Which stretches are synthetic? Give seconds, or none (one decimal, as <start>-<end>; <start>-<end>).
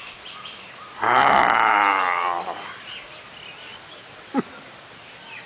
none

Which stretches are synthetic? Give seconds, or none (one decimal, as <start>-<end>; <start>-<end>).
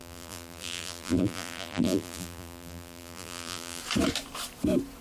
0.0-3.8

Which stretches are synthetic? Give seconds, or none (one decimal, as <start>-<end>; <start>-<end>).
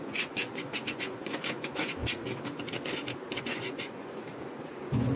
0.0-2.0; 3.4-5.2